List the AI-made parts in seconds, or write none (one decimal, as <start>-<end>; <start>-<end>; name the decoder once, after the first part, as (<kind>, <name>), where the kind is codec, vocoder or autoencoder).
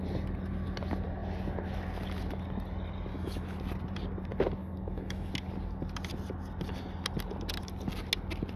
3.1-3.6 (autoencoder, DAC-VAE); 4.6-5.3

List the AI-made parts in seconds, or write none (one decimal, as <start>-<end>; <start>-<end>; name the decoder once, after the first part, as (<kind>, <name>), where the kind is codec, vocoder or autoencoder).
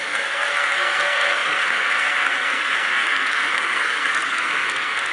0.0-5.1 (codec, SNAC)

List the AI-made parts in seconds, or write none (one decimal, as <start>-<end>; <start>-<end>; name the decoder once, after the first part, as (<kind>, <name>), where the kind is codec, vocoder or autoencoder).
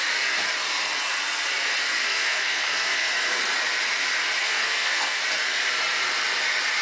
2.0-3.1 (codec, SNAC); 4.4-5.2